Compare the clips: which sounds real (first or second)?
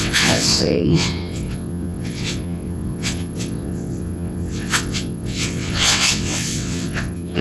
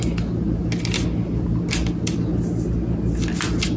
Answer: second